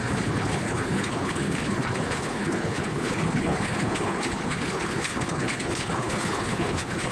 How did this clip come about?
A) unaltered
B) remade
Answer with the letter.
B